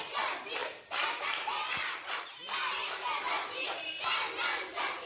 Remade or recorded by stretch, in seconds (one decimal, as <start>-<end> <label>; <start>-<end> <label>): 0.0-0.6 recorded; 0.6-3.7 remade; 3.7-5.1 recorded